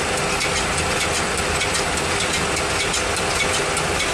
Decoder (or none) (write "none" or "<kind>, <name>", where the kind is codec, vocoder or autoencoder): none